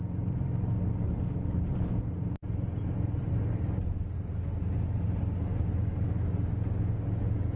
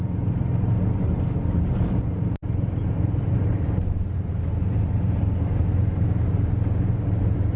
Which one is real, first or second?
first